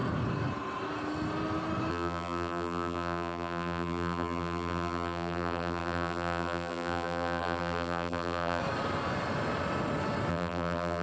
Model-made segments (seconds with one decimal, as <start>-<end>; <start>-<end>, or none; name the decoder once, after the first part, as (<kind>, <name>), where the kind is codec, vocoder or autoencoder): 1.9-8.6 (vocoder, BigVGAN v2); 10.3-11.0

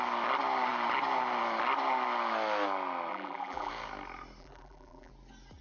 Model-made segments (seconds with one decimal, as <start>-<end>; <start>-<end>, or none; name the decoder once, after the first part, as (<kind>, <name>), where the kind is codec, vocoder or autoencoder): 3.1-3.7 (vocoder, BigVGAN v2); 4.4-5.1

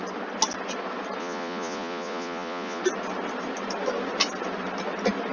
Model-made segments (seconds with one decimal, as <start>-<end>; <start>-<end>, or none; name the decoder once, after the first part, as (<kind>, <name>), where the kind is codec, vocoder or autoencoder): 1.2-2.8 (vocoder, Vocos)

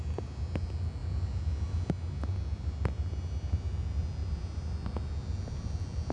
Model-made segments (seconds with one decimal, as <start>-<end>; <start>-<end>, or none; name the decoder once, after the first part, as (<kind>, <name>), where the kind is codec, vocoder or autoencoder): none

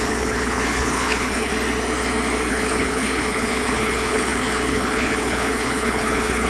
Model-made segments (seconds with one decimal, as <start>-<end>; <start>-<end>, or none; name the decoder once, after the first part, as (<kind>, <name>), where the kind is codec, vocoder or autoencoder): 0.0-1.5 (codec, HILCodec); 2.5-6.5